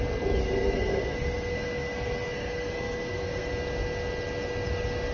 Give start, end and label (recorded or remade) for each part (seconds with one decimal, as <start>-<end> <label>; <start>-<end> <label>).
0.0-0.4 recorded; 0.4-3.5 remade; 3.5-5.1 recorded